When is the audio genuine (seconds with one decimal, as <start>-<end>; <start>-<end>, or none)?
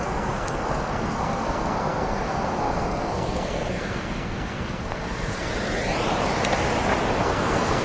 5.5-7.2